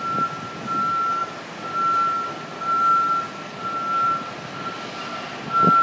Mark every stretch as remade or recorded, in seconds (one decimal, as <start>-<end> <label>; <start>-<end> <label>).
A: 0.0-1.2 recorded; 1.2-4.7 remade; 4.7-5.8 recorded